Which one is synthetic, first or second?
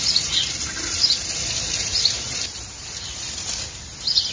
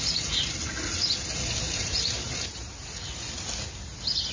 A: first